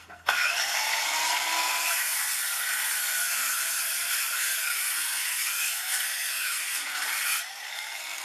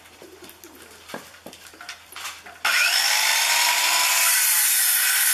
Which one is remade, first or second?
first